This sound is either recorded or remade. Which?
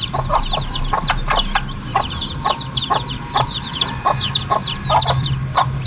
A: recorded